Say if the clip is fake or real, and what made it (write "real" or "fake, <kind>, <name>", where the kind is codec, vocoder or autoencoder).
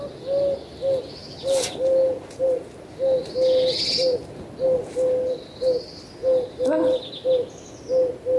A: real